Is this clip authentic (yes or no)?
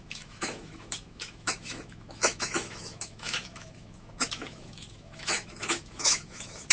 no